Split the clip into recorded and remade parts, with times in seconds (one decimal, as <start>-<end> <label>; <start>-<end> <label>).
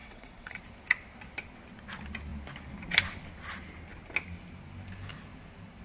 0.0-0.6 remade; 0.6-5.8 recorded